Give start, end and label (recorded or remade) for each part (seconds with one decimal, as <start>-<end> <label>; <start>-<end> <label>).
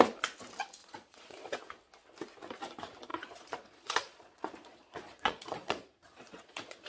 0.0-0.8 recorded; 0.8-1.5 remade; 1.5-3.1 recorded; 3.1-6.9 remade